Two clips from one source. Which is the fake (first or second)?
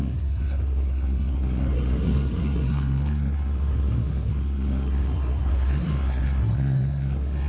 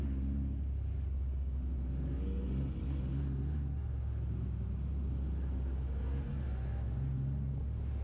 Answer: first